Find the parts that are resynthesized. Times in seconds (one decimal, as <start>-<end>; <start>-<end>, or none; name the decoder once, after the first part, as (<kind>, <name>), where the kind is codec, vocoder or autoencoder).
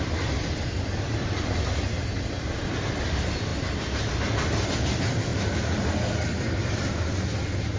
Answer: none